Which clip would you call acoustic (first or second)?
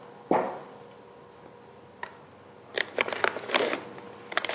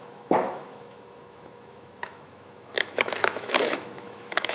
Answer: first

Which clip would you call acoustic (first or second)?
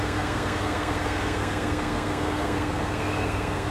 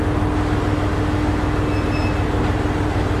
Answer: second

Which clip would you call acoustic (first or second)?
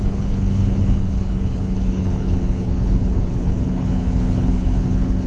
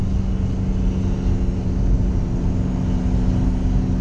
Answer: second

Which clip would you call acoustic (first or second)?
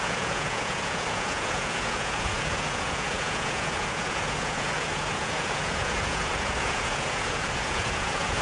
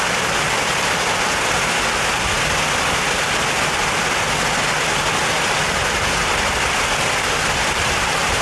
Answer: second